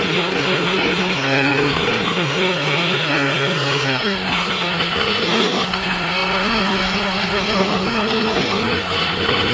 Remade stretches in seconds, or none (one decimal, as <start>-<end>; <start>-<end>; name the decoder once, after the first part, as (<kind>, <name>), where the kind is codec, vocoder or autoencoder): 0.0-9.5 (codec, SNAC)